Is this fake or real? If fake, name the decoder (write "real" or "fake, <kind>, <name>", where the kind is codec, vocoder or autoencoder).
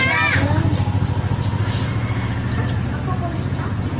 real